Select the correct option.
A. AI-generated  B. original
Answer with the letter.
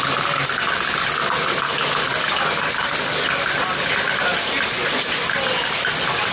B